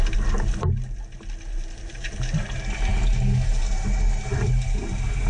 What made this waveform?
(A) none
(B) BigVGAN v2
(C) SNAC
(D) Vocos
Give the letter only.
A